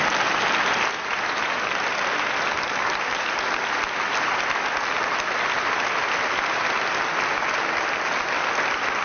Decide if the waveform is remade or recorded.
recorded